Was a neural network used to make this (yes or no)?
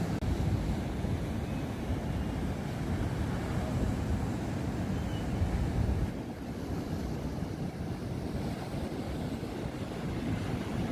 no